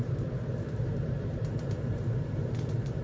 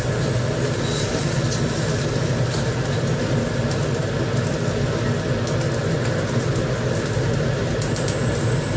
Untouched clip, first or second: second